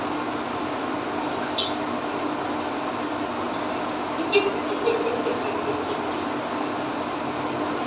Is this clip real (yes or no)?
yes